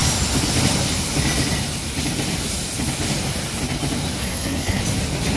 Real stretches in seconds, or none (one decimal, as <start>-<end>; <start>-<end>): 0.0-4.2; 4.8-5.4